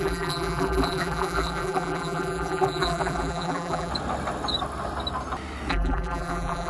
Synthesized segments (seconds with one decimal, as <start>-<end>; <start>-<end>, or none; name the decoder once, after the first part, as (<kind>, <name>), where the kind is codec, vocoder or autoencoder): 0.0-3.9 (vocoder, BigVGAN v2); 5.7-6.7